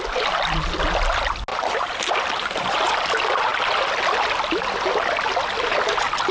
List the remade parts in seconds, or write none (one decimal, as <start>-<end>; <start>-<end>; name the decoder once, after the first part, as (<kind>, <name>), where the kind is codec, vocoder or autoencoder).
1.5-2.0 (vocoder, BigVGAN v2)